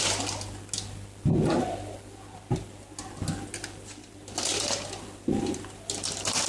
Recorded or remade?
recorded